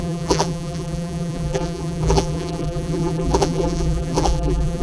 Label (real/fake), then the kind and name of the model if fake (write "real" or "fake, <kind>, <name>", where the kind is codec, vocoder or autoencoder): fake, vocoder, BigVGAN v2